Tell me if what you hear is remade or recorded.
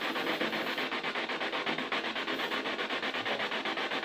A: recorded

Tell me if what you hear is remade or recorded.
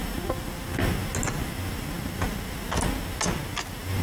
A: recorded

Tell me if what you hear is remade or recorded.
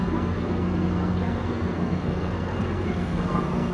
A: remade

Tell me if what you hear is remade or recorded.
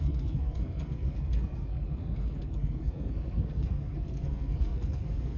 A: remade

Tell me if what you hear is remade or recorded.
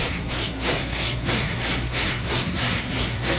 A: remade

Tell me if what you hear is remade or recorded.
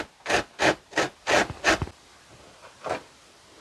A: recorded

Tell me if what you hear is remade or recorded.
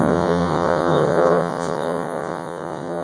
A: remade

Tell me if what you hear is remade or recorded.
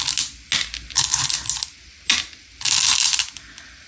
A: recorded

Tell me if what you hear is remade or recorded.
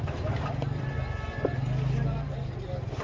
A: recorded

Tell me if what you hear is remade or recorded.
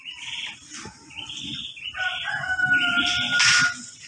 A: recorded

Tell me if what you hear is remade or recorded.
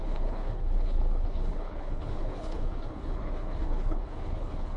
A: remade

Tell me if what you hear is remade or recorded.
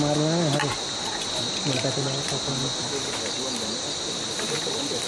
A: recorded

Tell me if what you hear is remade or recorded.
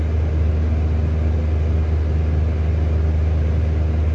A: recorded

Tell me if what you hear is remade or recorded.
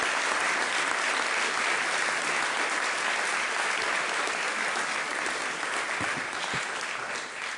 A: recorded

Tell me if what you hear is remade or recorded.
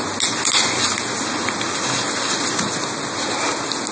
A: recorded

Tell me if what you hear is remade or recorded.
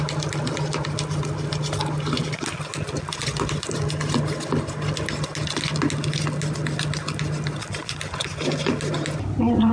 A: recorded